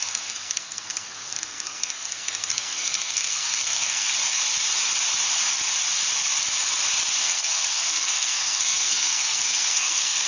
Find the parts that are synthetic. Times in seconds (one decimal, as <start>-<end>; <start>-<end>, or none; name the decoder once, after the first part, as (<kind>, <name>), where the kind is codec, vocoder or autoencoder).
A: 0.0-4.1 (codec, SNAC); 7.2-10.3